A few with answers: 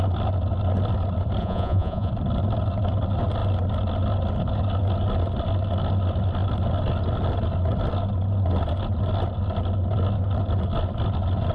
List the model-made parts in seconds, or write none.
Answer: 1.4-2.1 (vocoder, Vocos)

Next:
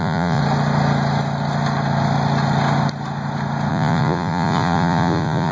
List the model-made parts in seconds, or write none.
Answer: 0.0-0.4 (vocoder, Vocos); 3.7-5.5

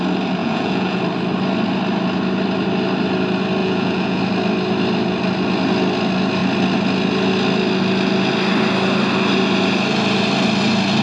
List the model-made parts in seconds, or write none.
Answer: 0.4-1.0 (vocoder, Vocos); 3.6-4.2

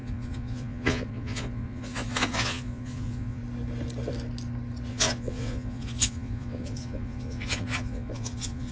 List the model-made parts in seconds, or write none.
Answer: 0.0-3.4 (vocoder, Vocos); 4.9-8.7

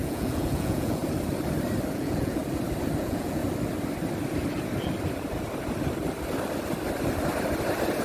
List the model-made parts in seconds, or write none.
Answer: 0.0-1.0 (vocoder, Vocos); 1.9-2.4; 3.0-3.4